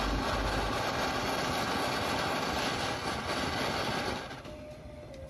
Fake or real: real